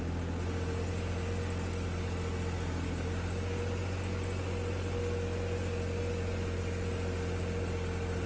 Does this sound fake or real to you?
real